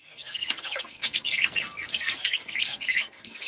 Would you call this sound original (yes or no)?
no